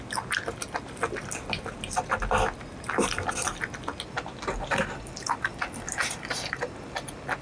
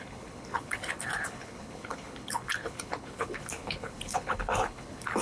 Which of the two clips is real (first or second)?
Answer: first